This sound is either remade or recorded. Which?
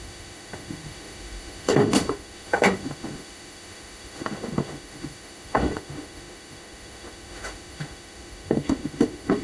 remade